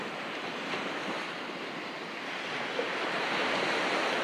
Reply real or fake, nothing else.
real